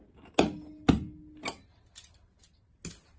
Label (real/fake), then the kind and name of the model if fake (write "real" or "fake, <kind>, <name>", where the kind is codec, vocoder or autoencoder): real